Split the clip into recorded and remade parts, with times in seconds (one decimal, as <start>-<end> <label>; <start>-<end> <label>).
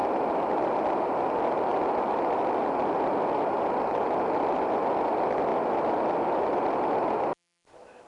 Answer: 0.0-1.7 recorded; 1.7-4.8 remade; 4.8-5.5 recorded; 5.5-8.1 remade